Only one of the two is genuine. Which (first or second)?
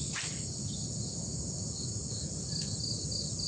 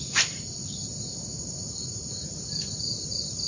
first